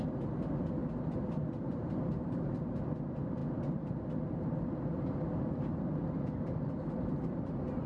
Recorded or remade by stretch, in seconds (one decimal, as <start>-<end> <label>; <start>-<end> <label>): 0.0-7.9 recorded